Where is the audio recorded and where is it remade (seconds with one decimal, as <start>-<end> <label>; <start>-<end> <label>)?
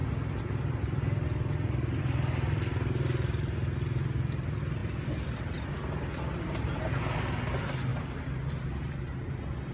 0.0-9.7 recorded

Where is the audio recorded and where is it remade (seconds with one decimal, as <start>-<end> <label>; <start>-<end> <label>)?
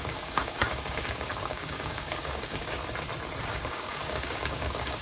0.0-2.8 remade; 2.8-3.4 recorded; 3.4-5.0 remade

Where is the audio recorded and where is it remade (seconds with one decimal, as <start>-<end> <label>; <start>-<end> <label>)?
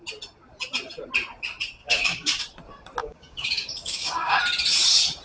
0.0-1.8 recorded; 1.8-2.4 remade; 2.4-3.0 recorded; 3.0-4.4 remade; 4.4-5.2 recorded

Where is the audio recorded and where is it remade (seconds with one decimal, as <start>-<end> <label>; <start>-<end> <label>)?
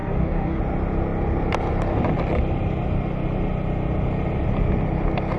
0.0-0.6 remade; 0.6-5.4 recorded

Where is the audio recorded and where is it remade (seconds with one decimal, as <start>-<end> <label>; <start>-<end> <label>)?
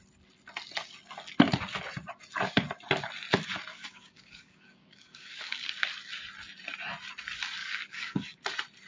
0.0-3.7 recorded; 3.7-5.7 remade; 5.7-7.6 recorded; 7.6-8.4 remade; 8.4-8.9 recorded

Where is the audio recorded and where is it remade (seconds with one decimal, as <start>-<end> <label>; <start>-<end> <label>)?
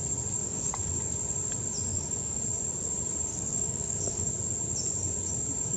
0.0-0.4 recorded; 0.4-1.0 remade; 1.0-1.9 recorded; 1.9-2.4 remade; 2.4-3.3 recorded; 3.3-4.3 remade; 4.3-5.8 recorded